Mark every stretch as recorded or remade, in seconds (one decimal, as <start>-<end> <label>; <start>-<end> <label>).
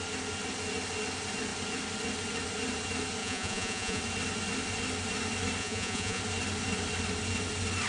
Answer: 0.0-3.2 recorded; 3.2-4.0 remade; 4.0-5.6 recorded; 5.6-6.2 remade; 6.2-7.9 recorded